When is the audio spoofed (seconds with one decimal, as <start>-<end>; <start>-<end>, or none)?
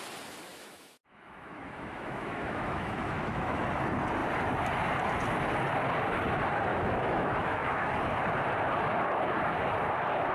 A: 0.5-3.6; 6.7-7.9